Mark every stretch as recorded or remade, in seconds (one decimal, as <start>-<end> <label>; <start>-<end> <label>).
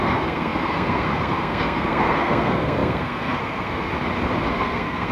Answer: 0.0-3.9 remade; 3.9-4.5 recorded; 4.5-5.1 remade